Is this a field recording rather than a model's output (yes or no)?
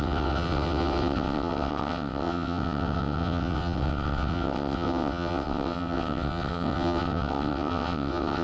no